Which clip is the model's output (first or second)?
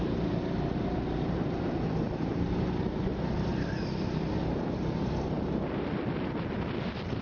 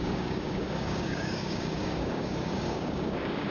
second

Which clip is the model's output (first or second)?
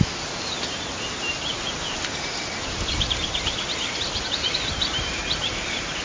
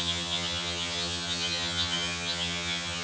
second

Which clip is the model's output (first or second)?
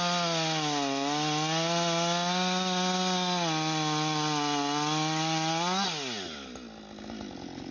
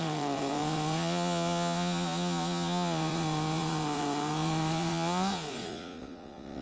second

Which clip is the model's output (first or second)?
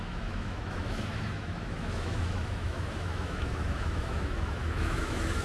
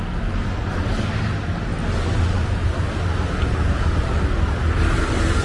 first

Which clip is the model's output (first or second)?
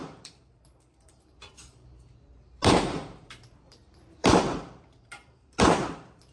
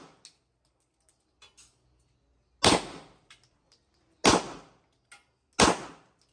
first